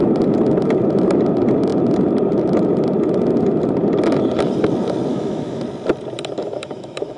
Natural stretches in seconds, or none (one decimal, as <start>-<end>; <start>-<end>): 0.0-5.1; 5.6-6.4